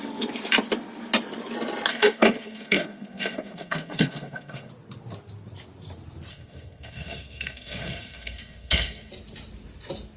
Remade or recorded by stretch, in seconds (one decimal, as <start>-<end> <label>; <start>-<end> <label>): 0.0-1.9 recorded; 1.9-4.7 remade; 4.7-6.3 recorded; 6.3-9.1 remade; 9.1-10.2 recorded